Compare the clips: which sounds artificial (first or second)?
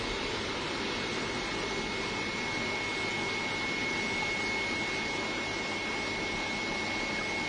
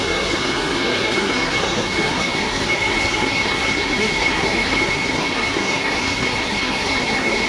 second